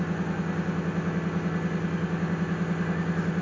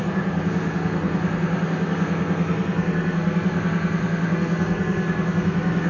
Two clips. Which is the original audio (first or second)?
first